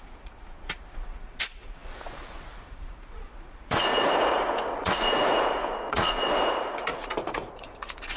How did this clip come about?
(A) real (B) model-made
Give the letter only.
B